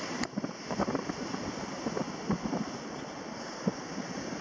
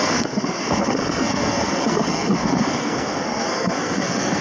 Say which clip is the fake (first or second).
second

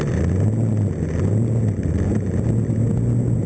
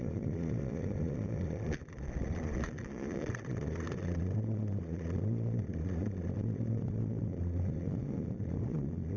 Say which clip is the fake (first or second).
second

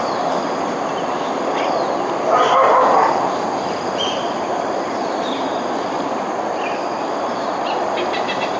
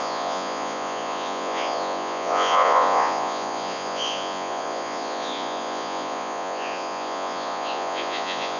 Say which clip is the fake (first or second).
second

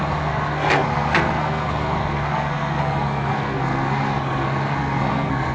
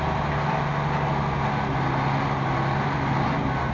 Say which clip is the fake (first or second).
first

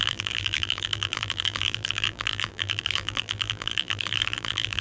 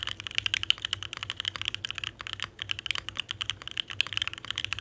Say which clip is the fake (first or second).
first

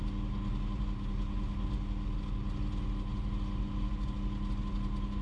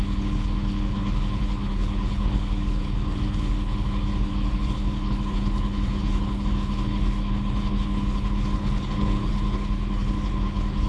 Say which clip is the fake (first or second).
second